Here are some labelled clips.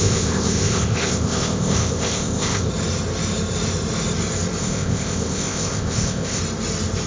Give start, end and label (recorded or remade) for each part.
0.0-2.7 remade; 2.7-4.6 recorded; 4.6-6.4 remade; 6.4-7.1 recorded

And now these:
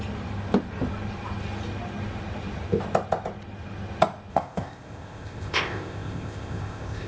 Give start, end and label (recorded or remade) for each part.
0.0-4.3 recorded; 4.3-7.1 remade

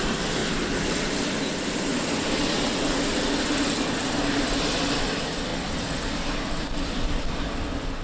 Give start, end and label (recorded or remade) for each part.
0.0-8.0 recorded